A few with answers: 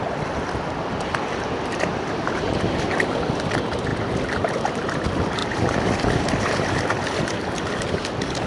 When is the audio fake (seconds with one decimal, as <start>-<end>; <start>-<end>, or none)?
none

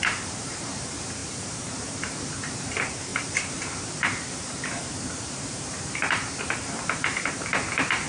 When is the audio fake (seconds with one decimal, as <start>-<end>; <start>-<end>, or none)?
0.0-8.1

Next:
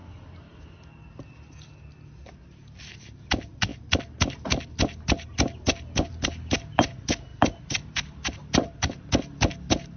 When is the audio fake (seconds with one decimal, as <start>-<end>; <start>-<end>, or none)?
7.3-7.8

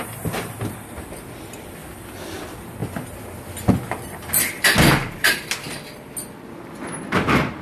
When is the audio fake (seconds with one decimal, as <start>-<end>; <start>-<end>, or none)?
none

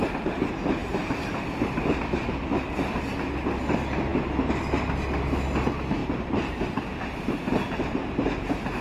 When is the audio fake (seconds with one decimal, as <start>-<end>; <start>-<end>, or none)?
0.8-2.5; 6.0-8.8

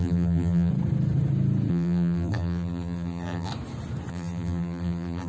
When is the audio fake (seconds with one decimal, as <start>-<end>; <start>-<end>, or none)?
0.0-0.7; 1.7-3.5; 4.1-5.3

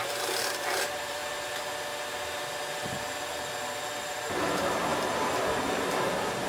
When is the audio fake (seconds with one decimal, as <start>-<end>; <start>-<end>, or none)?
0.0-1.2; 3.3-4.9; 5.9-6.5

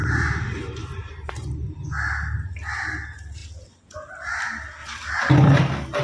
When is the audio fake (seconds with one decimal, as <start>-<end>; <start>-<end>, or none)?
0.0-1.3